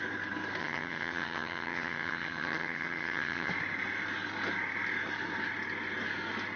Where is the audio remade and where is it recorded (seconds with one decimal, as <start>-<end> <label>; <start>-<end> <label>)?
0.0-0.6 recorded; 0.6-3.5 remade; 3.5-6.6 recorded